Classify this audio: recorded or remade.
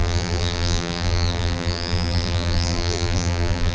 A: remade